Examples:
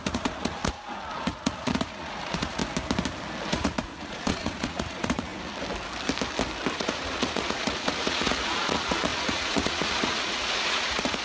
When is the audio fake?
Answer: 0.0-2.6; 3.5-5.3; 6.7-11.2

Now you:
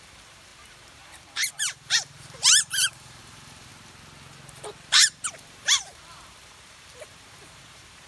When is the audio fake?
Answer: 0.0-3.7; 4.9-8.1

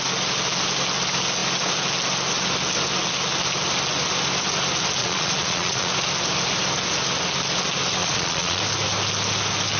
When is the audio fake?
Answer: 5.0-5.9; 8.0-8.6